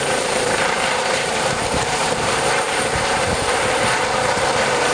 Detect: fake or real fake